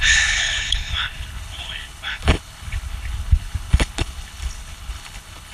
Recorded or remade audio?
remade